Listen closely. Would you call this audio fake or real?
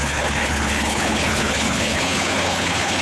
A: fake